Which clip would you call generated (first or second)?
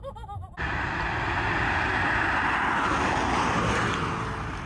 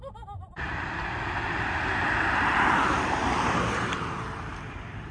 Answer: second